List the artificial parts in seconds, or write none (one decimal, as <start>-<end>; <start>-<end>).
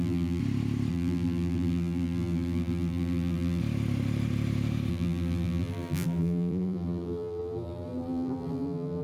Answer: 0.0-0.4; 0.9-3.6; 4.9-9.0